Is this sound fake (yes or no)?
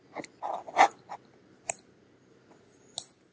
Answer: no